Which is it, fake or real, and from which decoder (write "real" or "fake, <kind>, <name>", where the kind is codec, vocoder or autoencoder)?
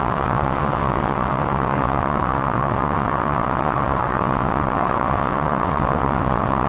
fake, vocoder, WaveNeXt